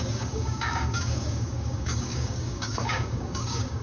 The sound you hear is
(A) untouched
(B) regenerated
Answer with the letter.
B